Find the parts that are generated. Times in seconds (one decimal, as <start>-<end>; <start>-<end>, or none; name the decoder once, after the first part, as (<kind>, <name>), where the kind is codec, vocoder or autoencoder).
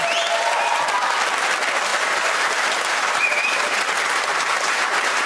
1.9-3.4 (vocoder, BigVGAN v2); 4.3-5.3